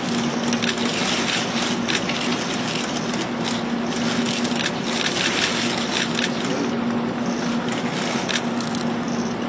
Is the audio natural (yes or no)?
yes